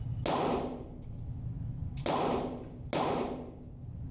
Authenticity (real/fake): real